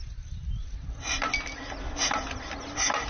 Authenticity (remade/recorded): recorded